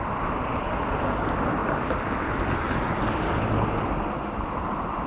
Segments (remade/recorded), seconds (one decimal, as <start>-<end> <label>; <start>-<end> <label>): 0.0-5.1 recorded